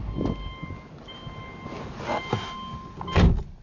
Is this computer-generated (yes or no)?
no